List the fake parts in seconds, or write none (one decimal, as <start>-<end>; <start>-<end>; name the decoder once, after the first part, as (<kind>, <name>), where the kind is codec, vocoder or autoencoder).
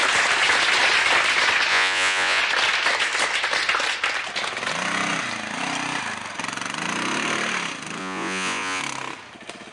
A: 1.7-2.4 (vocoder, Vocos); 8.0-8.8